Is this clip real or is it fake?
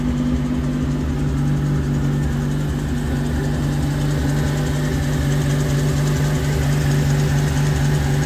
real